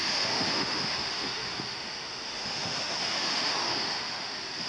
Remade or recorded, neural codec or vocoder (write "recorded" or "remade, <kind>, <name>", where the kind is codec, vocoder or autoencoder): remade, autoencoder, DAC-VAE